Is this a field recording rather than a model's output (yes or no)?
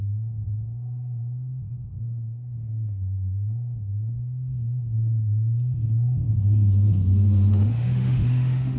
no